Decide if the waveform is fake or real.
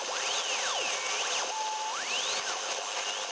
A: real